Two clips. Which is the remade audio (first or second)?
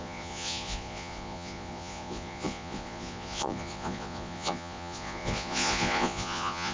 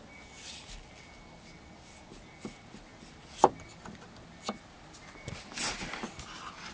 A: first